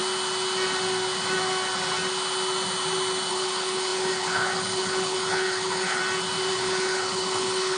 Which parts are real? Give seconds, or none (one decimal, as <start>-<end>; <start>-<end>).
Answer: 0.0-3.3; 6.0-6.5